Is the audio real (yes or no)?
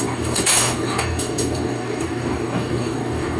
no